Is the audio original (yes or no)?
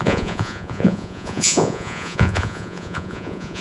no